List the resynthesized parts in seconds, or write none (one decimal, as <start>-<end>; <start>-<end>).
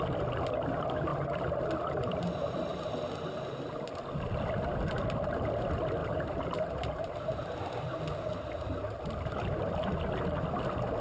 6.0-7.4